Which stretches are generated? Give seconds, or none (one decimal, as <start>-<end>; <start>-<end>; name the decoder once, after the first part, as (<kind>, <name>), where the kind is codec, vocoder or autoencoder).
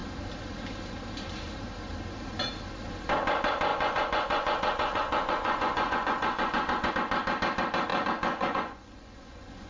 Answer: 3.7-6.9 (vocoder, Vocos); 7.9-9.7